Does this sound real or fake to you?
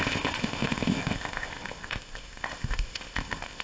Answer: fake